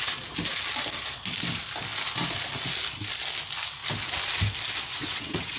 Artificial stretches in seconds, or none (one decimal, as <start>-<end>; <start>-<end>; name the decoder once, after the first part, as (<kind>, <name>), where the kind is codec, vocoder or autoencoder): 4.9-5.6 (vocoder, WaveNeXt)